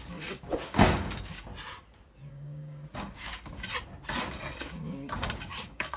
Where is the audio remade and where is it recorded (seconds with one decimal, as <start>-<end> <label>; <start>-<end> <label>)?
0.0-1.5 remade; 1.5-2.3 recorded; 2.3-3.3 remade; 3.3-4.6 recorded; 4.6-6.0 remade